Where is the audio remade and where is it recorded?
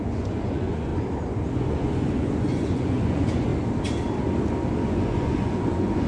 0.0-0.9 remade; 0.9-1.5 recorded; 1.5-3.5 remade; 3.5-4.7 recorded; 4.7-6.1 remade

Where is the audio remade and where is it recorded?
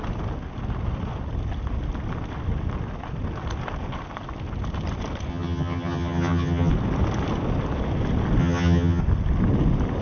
0.0-5.3 recorded; 5.3-6.7 remade; 6.7-8.4 recorded; 8.4-9.0 remade; 9.0-10.0 recorded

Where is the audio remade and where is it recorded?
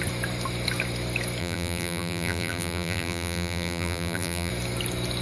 0.0-1.4 recorded; 1.4-4.5 remade; 4.5-5.2 recorded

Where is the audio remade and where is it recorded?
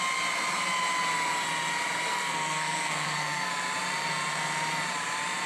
0.0-2.1 recorded; 2.1-3.5 remade; 3.5-5.5 recorded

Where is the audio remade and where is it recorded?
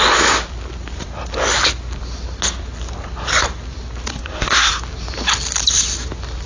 0.0-4.1 recorded; 4.1-4.7 remade; 4.7-6.5 recorded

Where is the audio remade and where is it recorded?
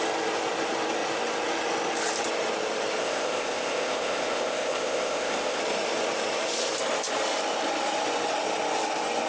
0.0-3.0 recorded; 3.0-5.6 remade; 5.6-9.3 recorded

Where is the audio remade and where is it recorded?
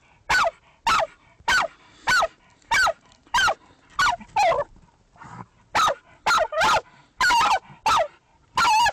0.0-8.9 recorded